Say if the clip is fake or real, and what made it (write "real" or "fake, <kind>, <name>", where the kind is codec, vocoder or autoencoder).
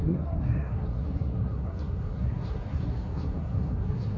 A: fake, codec, SNAC